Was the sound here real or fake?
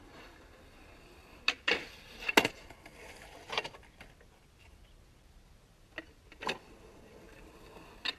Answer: real